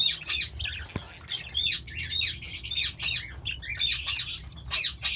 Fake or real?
real